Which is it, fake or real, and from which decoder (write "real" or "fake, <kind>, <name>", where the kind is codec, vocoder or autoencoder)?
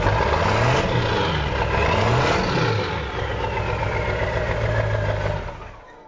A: real